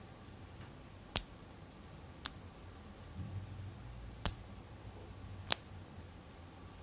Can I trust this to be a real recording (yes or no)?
yes